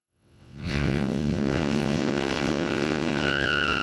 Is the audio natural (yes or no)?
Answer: no